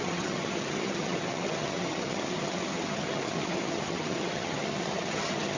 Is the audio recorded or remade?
remade